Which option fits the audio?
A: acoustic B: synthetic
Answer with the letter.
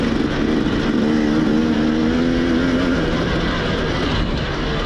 A